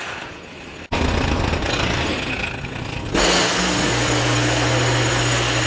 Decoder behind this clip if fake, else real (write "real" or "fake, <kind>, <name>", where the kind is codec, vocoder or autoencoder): real